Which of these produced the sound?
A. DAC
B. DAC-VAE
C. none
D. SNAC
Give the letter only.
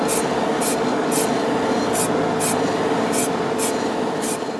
C